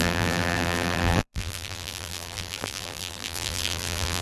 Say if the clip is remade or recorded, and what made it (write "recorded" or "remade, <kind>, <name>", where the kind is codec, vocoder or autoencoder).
remade, vocoder, BigVGAN v2